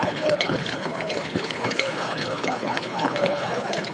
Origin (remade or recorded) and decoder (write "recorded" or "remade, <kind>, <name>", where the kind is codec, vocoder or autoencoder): remade, codec, HILCodec